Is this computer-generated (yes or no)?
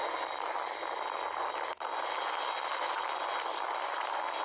no